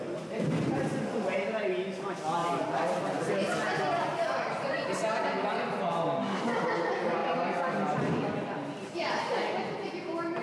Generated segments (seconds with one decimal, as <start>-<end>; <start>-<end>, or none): 2.4-3.2; 7.2-9.1